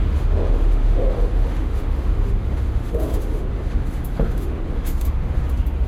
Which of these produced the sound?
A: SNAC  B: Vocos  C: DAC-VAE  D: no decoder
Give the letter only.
C